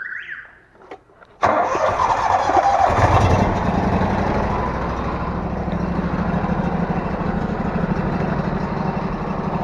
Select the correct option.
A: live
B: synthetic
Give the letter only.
A